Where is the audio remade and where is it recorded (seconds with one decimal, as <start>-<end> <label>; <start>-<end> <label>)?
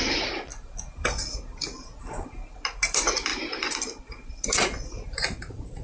0.0-0.5 remade; 0.5-2.0 recorded; 2.0-3.3 remade; 3.3-4.0 recorded; 4.0-5.8 remade